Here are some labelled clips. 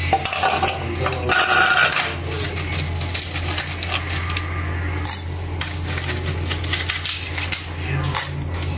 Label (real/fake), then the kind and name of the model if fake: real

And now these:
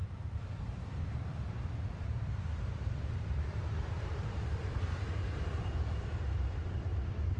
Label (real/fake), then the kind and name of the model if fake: fake, vocoder, BigVGAN v2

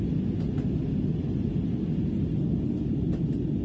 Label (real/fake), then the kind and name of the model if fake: real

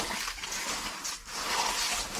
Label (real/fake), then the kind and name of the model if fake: real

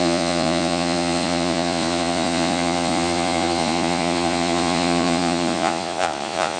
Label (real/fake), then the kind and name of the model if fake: fake, vocoder, Vocos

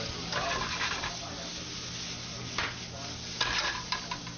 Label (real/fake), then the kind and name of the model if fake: real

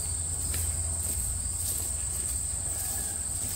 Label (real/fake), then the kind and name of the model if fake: real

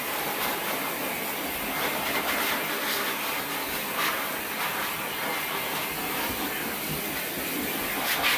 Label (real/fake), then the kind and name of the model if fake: real